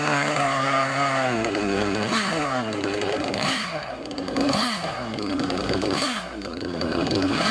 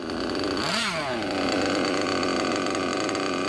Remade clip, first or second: first